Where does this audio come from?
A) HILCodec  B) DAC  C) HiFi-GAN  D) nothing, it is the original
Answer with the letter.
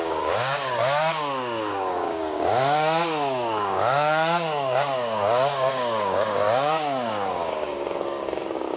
B